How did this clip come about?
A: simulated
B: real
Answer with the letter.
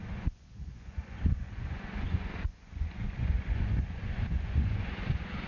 A